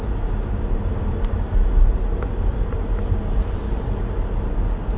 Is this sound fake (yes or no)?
no